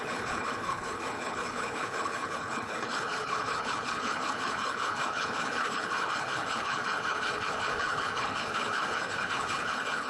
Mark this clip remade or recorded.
remade